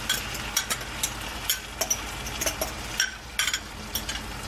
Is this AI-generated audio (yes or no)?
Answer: no